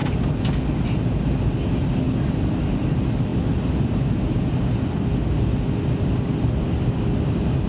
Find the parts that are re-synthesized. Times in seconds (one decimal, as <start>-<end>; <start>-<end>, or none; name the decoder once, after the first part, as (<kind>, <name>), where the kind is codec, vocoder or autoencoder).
2.3-5.1 (vocoder, BigVGAN v2); 5.8-7.7